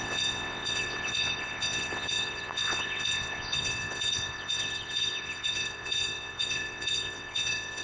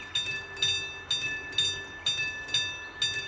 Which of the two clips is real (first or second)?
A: second